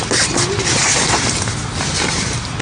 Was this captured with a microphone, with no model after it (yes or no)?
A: yes